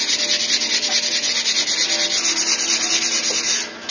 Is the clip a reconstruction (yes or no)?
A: no